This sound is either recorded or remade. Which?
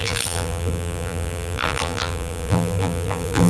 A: remade